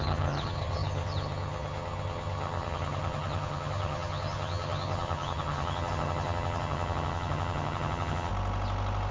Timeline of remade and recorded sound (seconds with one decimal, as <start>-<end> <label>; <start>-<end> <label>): 0.0-8.3 remade; 8.3-9.1 recorded